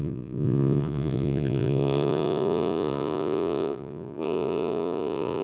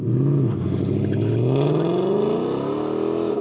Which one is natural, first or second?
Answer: second